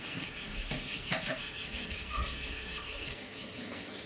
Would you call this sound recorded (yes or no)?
no